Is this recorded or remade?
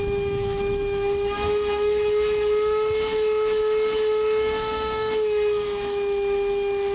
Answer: remade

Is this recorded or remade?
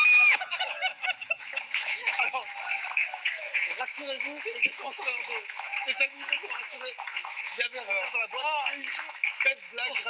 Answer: remade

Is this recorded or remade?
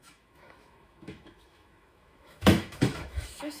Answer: remade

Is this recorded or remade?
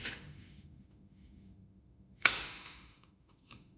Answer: remade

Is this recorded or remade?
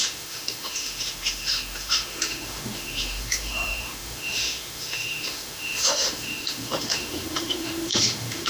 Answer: remade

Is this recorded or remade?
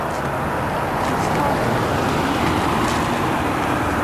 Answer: recorded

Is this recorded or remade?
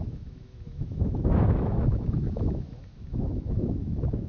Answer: remade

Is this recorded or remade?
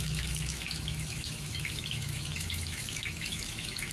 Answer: remade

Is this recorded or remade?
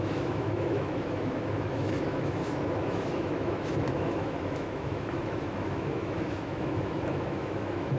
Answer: remade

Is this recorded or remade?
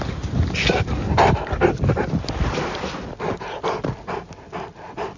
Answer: recorded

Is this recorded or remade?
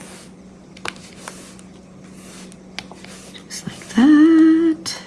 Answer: recorded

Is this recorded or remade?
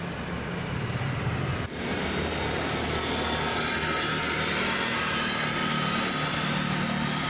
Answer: recorded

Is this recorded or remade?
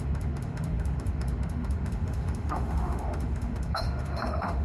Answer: remade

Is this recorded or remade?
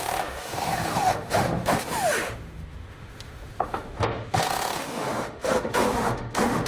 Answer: remade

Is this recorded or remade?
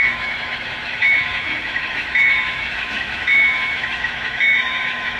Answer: remade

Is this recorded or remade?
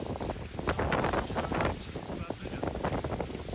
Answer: recorded